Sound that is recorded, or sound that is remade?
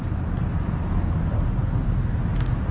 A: recorded